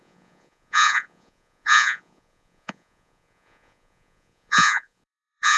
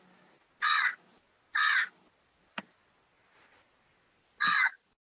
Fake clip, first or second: first